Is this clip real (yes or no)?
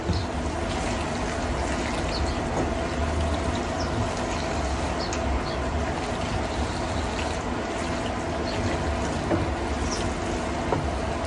yes